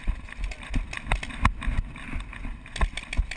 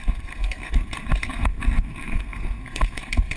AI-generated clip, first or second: second